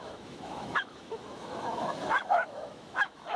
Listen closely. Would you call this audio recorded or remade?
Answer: remade